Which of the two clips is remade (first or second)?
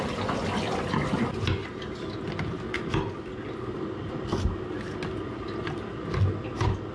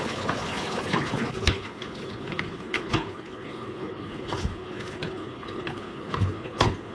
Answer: second